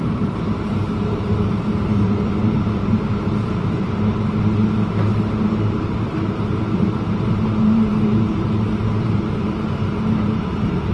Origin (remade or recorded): remade